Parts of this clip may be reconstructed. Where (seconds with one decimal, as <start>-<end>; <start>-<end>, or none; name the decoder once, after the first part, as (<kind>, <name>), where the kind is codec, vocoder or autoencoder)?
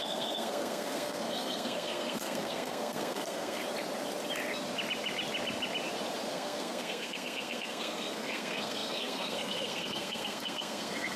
0.0-3.6 (codec, SNAC); 6.3-11.2